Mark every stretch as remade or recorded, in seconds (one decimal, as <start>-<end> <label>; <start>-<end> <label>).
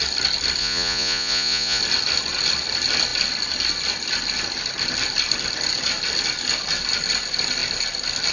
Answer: 0.0-0.6 recorded; 0.6-1.8 remade; 1.8-8.3 recorded